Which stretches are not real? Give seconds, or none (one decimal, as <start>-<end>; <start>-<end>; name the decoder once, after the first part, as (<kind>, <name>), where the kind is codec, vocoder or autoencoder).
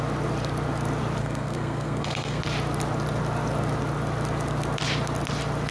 1.2-2.4 (codec, SNAC)